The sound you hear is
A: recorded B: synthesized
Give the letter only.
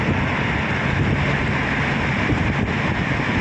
B